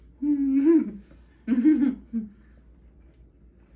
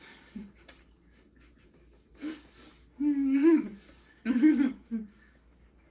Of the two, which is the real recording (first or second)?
first